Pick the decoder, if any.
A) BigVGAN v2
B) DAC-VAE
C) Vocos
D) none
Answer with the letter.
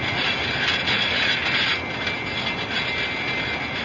D